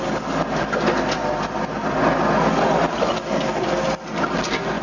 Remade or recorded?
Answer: recorded